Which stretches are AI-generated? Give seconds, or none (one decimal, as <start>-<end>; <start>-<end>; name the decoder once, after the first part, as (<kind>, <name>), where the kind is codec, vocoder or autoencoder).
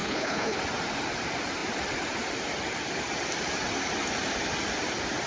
0.0-0.6 (codec, HILCodec)